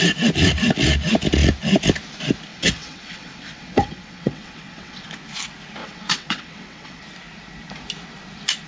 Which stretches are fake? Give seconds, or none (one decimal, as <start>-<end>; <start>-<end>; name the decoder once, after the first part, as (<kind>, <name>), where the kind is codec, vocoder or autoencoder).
2.5-5.1 (vocoder, WaveNeXt); 5.8-7.0